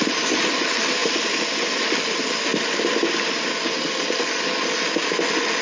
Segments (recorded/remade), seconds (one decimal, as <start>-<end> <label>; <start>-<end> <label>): 0.0-5.6 recorded